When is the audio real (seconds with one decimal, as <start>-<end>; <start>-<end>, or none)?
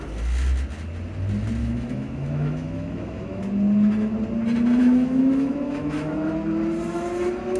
0.0-1.6; 3.4-4.8; 6.3-7.6